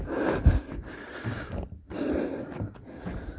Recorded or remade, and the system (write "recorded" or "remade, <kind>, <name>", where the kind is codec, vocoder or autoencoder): recorded